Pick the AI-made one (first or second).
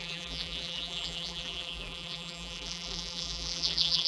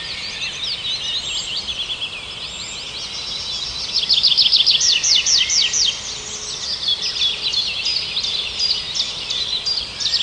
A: first